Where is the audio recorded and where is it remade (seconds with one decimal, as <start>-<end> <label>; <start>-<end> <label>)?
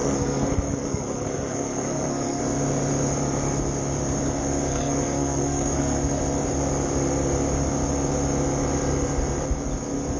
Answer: 0.0-2.4 remade; 2.4-4.7 recorded; 4.7-6.2 remade; 6.2-10.2 recorded